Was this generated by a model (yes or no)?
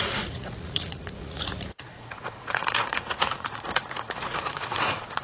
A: yes